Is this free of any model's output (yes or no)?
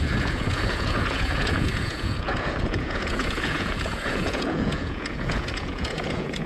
no